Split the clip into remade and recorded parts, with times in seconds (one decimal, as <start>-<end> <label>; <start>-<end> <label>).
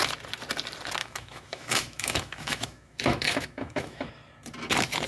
0.0-1.0 recorded; 1.0-4.1 remade; 4.1-5.1 recorded